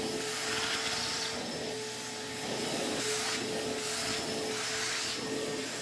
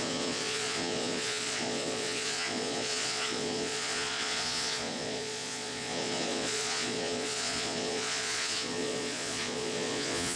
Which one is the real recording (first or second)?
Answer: first